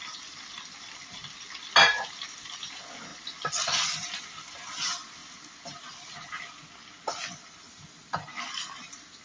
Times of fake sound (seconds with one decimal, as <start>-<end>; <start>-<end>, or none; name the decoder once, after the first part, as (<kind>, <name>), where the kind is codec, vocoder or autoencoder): none

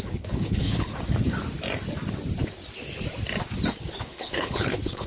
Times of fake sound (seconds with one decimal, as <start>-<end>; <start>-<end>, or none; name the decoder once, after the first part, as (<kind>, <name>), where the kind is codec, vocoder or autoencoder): 0.0-0.9 (codec, HILCodec); 4.0-5.1

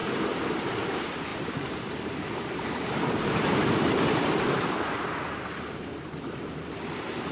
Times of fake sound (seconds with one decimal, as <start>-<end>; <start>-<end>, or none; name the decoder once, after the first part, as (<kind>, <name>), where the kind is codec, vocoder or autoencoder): 1.3-4.4 (vocoder, BigVGAN v2)

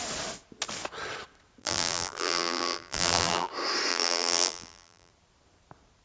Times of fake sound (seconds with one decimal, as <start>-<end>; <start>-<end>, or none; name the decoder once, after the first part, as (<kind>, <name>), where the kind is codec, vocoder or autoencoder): 1.6-3.5 (vocoder, BigVGAN v2); 3.9-5.1

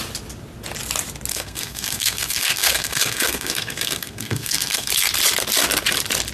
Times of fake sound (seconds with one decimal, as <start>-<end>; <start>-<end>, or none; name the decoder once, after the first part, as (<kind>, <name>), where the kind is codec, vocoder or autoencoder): 1.3-4.9 (codec, SNAC)